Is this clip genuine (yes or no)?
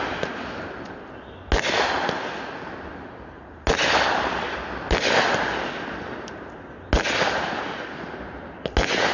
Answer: yes